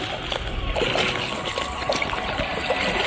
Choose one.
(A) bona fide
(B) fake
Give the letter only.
A